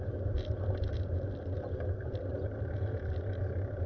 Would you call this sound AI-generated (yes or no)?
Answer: no